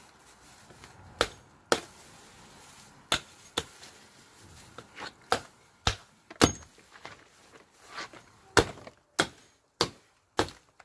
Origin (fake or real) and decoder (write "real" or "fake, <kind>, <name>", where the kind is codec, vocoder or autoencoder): real